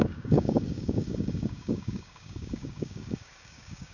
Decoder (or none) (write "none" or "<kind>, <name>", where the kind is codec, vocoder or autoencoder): codec, DAC